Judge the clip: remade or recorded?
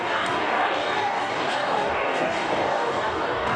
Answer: remade